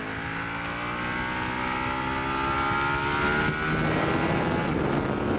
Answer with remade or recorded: recorded